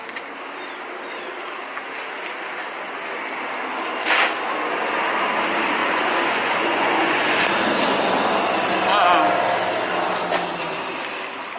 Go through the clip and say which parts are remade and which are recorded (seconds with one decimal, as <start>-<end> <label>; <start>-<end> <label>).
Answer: 0.0-5.8 recorded; 5.8-7.5 remade; 7.5-11.6 recorded